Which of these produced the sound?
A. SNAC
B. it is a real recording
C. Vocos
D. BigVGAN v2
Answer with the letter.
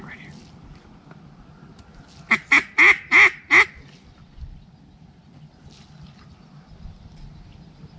B